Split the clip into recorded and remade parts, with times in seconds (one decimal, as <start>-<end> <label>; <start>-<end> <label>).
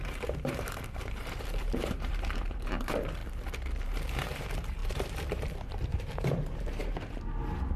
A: 0.0-3.2 remade; 3.2-3.8 recorded; 3.8-6.8 remade; 6.8-7.8 recorded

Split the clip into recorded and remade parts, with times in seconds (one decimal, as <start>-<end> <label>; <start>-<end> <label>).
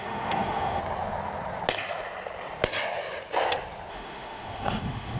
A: 0.0-0.8 remade; 0.8-3.9 recorded; 3.9-5.2 remade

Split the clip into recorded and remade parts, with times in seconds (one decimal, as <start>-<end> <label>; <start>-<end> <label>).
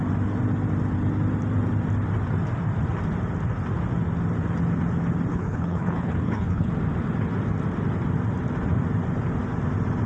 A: 0.0-5.3 recorded; 5.3-6.7 remade; 6.7-10.1 recorded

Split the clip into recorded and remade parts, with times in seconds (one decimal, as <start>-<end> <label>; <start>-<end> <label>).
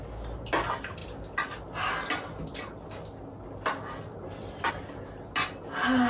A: 0.0-6.1 recorded